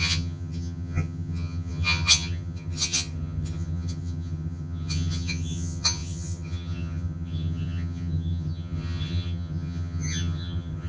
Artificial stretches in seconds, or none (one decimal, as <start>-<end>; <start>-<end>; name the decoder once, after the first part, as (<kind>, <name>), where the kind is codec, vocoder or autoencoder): 0.0-10.9 (vocoder, HiFi-GAN)